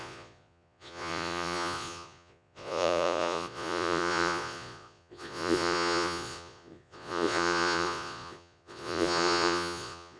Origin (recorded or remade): remade